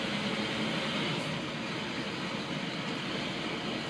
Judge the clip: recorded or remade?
recorded